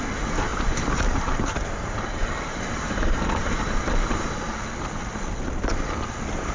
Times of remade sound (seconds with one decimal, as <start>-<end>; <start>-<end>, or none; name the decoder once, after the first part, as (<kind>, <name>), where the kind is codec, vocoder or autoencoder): 0.5-4.4 (vocoder, BigVGAN v2)